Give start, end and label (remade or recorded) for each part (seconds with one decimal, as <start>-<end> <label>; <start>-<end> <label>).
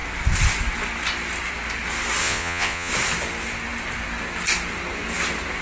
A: 0.0-2.2 recorded; 2.2-2.9 remade; 2.9-5.6 recorded